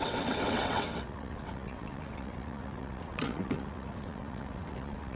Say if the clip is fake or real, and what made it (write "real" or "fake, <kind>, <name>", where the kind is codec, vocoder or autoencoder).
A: fake, vocoder, WaveNeXt